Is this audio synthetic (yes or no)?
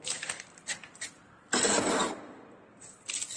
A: no